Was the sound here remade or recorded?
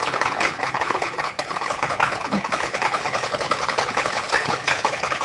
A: remade